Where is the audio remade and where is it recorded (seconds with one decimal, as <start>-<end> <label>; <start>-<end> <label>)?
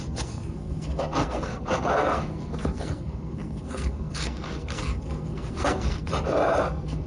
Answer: 0.0-6.1 remade; 6.1-6.6 recorded; 6.6-7.1 remade